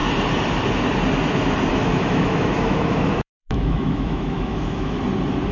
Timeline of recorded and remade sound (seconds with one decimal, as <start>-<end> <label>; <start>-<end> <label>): 0.0-1.7 recorded; 1.7-5.0 remade; 5.0-5.5 recorded